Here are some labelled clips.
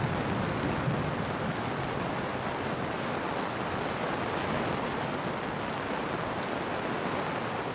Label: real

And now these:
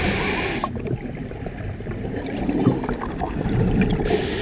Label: real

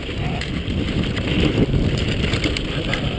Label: real